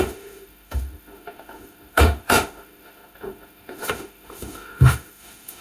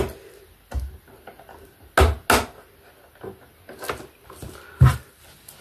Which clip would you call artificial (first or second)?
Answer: first